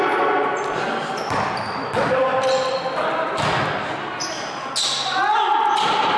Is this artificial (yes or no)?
no